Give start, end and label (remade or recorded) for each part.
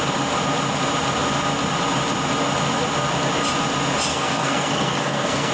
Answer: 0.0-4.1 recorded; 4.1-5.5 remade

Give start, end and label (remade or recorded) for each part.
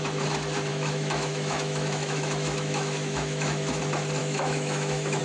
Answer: 0.0-0.7 recorded; 0.7-3.8 remade; 3.8-4.2 recorded; 4.2-5.2 remade